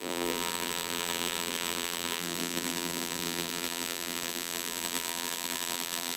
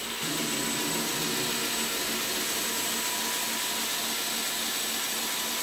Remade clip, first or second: first